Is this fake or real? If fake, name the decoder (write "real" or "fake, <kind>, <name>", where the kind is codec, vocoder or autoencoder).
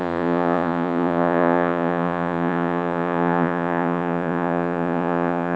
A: fake, vocoder, Vocos